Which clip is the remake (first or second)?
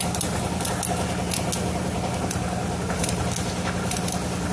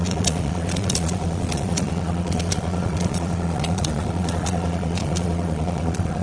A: second